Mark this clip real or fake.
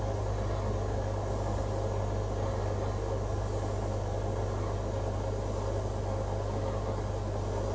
real